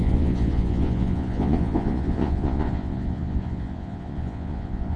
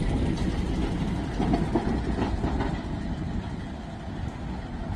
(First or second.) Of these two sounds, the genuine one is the second